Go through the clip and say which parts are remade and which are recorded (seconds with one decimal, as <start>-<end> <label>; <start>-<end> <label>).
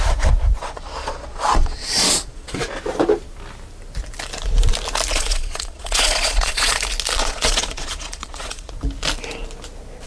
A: 0.0-0.6 recorded; 0.6-2.8 remade; 2.8-5.1 recorded; 5.1-6.8 remade; 6.8-7.2 recorded; 7.2-8.7 remade; 8.7-10.1 recorded